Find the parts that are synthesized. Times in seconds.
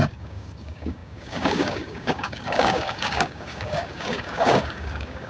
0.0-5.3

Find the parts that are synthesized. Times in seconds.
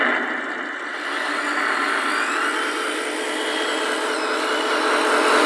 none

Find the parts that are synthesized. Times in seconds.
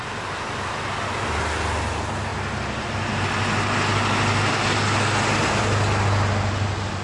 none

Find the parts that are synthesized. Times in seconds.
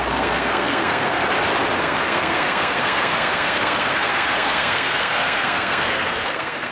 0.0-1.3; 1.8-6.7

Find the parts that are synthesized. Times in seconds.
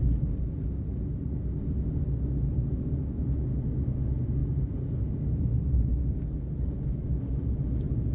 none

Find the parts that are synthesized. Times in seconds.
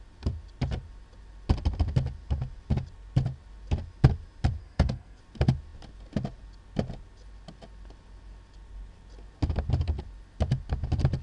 4.6-5.2